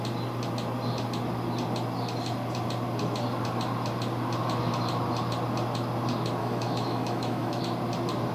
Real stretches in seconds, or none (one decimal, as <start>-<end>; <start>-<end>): 0.0-6.4; 7.6-8.3